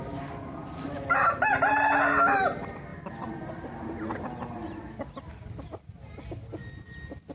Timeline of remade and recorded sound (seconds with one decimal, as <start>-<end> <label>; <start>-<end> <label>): 0.0-7.3 recorded